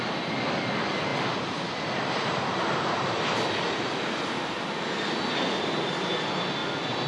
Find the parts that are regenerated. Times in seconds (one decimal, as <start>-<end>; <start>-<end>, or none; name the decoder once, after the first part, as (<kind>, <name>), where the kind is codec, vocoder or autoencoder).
none